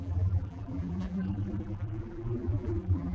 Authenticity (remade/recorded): remade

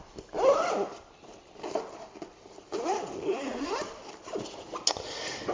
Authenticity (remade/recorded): recorded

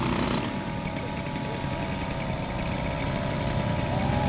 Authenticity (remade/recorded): recorded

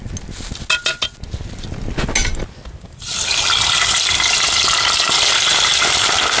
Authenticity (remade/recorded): recorded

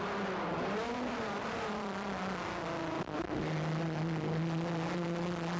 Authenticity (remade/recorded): recorded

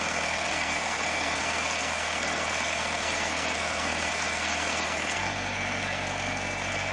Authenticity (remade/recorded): remade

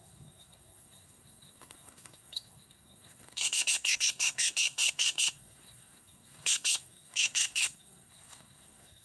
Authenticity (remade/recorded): remade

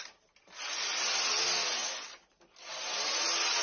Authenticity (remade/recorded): recorded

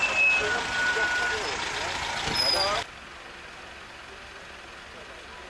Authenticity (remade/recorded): recorded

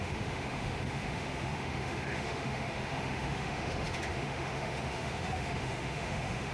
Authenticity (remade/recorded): remade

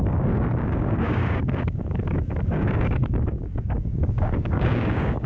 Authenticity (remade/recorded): remade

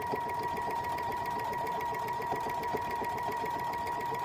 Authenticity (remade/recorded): remade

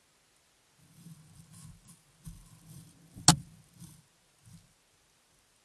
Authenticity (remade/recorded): recorded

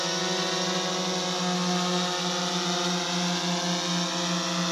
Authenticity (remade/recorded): recorded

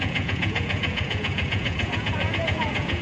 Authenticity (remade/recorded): remade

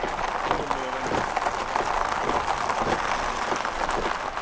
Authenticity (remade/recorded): recorded